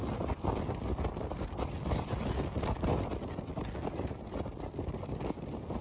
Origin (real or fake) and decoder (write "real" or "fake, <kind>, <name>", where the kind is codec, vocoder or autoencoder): real